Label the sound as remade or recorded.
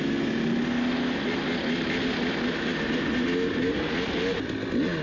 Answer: recorded